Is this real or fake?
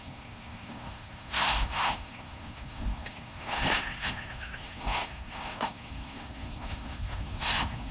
fake